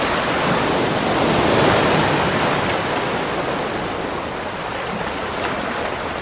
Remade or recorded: recorded